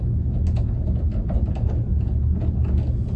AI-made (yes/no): no